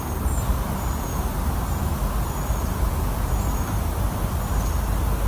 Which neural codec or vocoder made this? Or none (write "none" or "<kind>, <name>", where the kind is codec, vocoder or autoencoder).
none